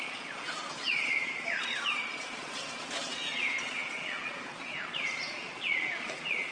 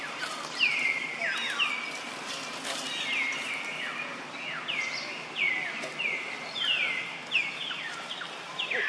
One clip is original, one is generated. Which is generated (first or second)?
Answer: first